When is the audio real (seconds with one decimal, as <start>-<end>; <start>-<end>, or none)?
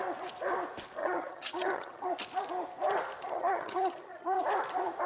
0.0-1.0; 2.1-3.2; 4.4-5.1